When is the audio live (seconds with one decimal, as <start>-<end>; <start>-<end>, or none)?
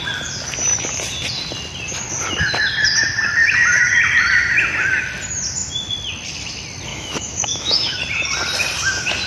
0.0-6.9; 8.0-9.3